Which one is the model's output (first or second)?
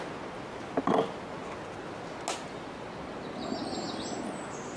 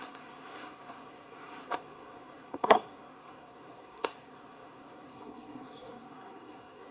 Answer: second